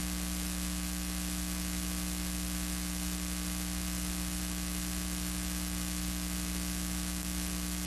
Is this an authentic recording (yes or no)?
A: yes